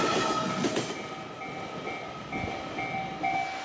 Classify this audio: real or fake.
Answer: real